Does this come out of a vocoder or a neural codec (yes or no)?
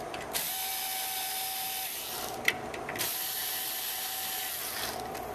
no